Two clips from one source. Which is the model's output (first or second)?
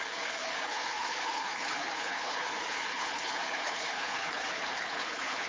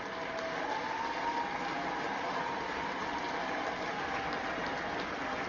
first